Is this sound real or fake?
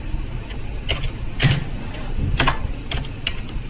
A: real